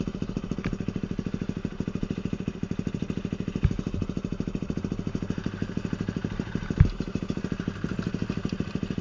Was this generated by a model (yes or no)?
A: no